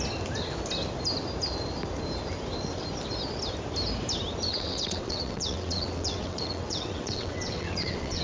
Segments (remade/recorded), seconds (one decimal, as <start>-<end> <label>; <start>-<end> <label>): 0.0-4.5 recorded; 4.5-8.2 remade